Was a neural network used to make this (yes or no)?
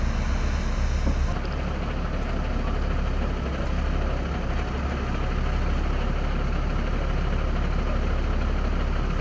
no